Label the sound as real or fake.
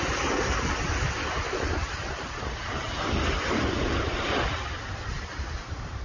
real